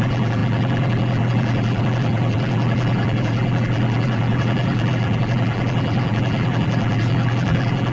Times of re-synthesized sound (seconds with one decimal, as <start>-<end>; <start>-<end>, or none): 0.0-7.9